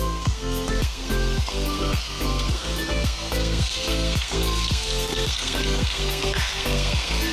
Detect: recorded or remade remade